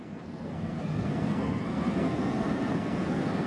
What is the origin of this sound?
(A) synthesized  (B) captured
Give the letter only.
A